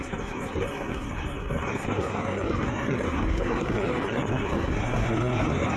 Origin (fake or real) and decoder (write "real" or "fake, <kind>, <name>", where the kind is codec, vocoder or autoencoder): fake, codec, SNAC